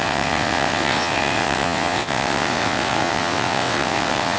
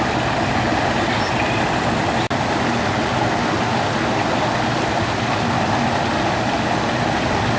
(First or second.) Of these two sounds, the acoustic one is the second